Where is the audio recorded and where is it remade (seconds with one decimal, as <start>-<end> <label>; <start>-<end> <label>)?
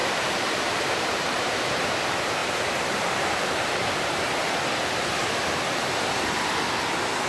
0.0-1.8 remade; 1.8-2.4 recorded; 2.4-4.4 remade; 4.4-7.3 recorded